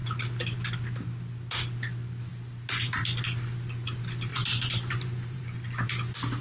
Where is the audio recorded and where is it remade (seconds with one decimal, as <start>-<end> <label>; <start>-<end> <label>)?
0.0-4.3 recorded; 4.3-5.4 remade; 5.4-6.4 recorded